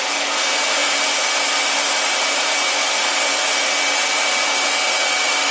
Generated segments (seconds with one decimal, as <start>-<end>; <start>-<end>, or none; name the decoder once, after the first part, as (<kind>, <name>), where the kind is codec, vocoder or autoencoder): none